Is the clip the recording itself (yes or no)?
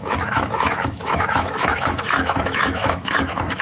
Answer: no